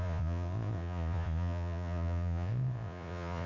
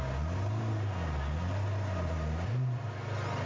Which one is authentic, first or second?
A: second